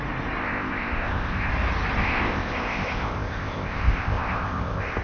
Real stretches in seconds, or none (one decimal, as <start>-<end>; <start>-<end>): 0.0-0.4; 1.5-2.0